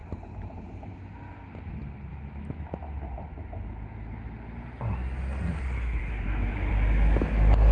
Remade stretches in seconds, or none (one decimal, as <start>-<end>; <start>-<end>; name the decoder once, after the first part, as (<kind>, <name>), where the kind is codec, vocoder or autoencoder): 2.1-2.8 (autoencoder, DAC-VAE); 6.0-6.7